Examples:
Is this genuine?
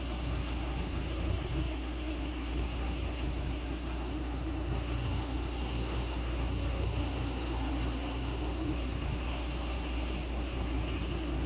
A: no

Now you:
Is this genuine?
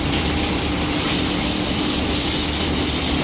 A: no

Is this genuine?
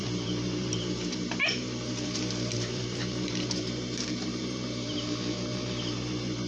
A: no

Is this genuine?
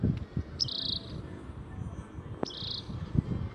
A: yes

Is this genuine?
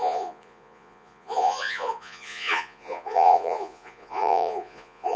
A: no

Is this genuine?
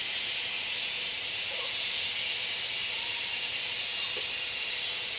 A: yes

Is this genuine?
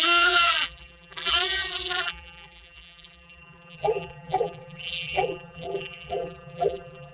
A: no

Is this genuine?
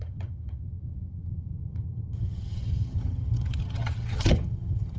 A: no